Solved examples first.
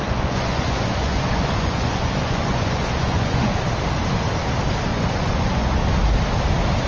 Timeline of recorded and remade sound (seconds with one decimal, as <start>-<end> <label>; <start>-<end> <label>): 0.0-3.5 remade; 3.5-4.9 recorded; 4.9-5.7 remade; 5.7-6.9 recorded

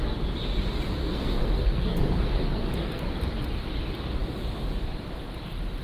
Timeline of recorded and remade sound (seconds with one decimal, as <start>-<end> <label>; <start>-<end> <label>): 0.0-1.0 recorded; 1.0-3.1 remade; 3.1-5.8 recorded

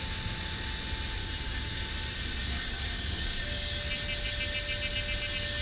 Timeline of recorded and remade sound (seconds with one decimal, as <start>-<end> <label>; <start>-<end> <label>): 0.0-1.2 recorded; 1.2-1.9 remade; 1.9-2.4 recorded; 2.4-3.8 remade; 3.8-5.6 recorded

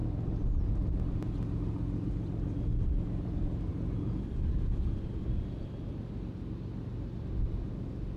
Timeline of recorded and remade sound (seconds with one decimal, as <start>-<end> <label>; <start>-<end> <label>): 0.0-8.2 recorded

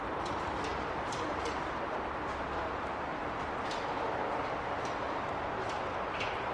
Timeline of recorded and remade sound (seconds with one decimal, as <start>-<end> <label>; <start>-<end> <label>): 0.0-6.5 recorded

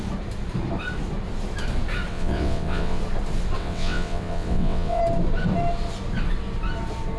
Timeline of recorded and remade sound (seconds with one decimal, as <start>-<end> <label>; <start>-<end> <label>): 0.0-2.1 recorded; 2.1-3.0 remade; 3.0-3.6 recorded; 3.6-5.0 remade; 5.0-7.2 recorded

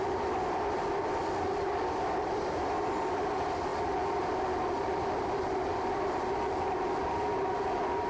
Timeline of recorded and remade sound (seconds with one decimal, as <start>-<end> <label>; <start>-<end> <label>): 0.0-8.1 recorded